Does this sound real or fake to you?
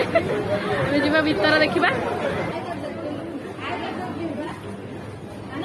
real